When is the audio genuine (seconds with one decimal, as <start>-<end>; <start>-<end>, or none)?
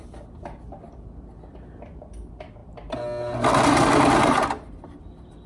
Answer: 0.0-5.5